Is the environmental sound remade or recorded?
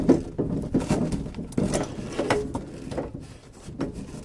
recorded